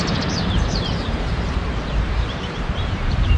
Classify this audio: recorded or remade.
remade